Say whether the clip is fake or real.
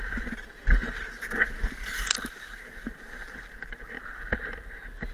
real